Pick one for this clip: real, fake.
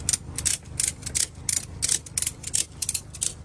real